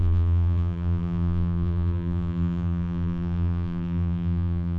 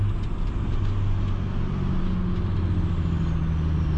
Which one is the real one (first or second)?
second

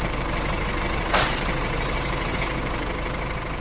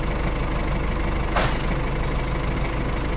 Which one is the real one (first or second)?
second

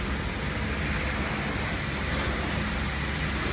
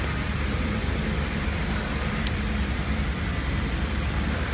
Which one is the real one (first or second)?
first